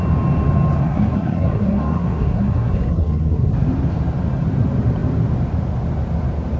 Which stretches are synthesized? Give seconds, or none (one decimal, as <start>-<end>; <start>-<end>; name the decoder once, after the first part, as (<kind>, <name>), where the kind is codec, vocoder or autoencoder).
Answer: 0.8-3.5 (codec, SNAC)